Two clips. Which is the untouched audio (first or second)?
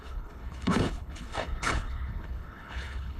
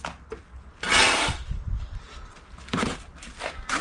second